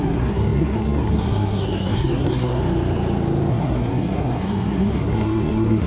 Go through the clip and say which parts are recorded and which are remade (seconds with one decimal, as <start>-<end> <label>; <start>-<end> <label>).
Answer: 0.0-2.6 remade; 2.6-3.5 recorded; 3.5-5.9 remade